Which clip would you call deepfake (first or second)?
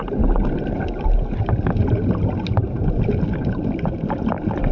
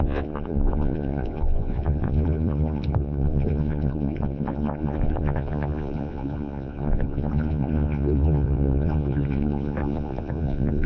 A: second